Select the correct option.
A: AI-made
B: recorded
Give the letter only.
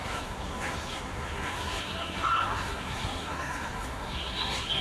A